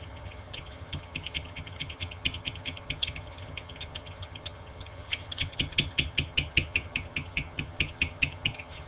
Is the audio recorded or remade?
remade